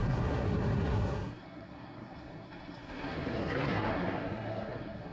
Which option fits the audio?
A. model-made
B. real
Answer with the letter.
A